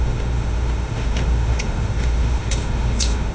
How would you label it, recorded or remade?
remade